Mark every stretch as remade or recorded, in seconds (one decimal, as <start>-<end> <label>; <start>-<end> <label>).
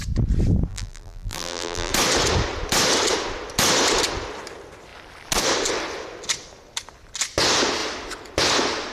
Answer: 0.0-0.7 recorded; 0.7-1.9 remade; 1.9-8.9 recorded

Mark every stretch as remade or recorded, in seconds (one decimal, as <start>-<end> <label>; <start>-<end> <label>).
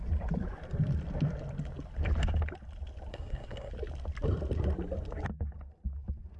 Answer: 0.0-3.1 recorded; 3.1-3.7 remade; 3.7-6.4 recorded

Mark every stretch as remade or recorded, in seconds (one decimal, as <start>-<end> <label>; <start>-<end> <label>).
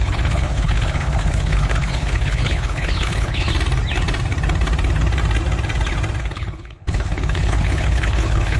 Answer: 0.0-3.5 remade; 3.5-6.2 recorded; 6.2-8.6 remade